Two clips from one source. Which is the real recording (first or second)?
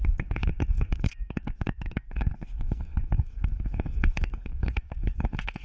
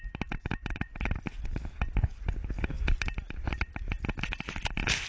second